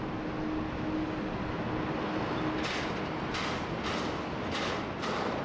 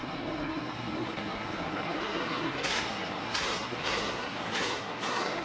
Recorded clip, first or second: first